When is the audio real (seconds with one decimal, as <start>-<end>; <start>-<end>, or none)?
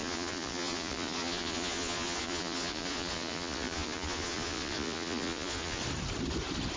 5.8-6.8